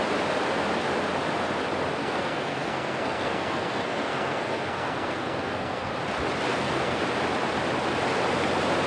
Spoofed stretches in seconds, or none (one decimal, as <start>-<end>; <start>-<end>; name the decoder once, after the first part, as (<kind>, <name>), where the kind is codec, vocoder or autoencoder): 2.0-5.9 (codec, SNAC); 6.5-7.0